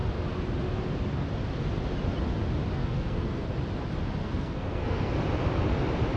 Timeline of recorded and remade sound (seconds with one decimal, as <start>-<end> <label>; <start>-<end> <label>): 0.0-2.8 recorded; 2.8-3.5 remade; 3.5-4.2 recorded; 4.2-5.2 remade; 5.2-6.2 recorded